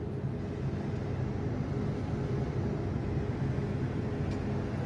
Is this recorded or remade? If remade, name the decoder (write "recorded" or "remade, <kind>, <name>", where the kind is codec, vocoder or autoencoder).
recorded